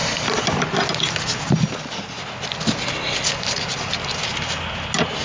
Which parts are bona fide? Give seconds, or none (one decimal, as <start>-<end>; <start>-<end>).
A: 0.0-5.2